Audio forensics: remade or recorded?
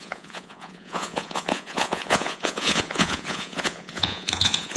remade